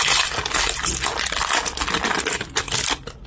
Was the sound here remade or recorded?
recorded